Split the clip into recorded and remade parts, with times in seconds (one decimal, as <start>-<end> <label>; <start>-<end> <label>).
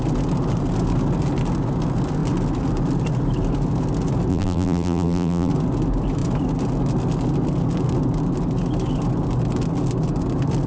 0.0-4.3 recorded; 4.3-5.5 remade; 5.5-10.7 recorded